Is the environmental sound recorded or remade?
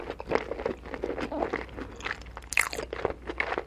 recorded